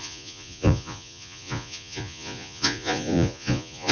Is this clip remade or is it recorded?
remade